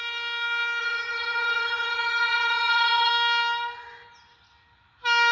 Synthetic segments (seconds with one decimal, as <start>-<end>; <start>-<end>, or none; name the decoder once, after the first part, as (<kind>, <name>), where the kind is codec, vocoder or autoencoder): 0.8-3.1 (vocoder, Vocos)